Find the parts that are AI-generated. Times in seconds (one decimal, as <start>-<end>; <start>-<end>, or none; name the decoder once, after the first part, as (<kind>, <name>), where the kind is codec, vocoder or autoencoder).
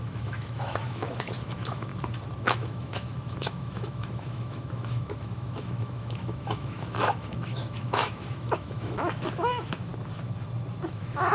0.0-1.9 (autoencoder, DAC-VAE); 2.4-9.9; 10.9-11.3